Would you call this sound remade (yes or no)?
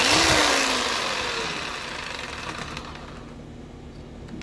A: no